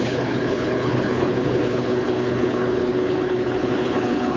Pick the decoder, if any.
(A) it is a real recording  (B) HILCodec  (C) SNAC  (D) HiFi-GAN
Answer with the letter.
B